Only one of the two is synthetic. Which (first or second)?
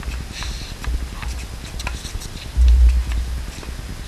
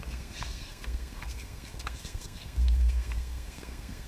second